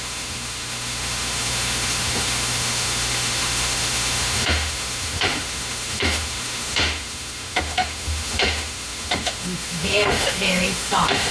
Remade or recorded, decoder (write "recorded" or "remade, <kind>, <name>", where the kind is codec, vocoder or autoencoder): remade, autoencoder, DAC-VAE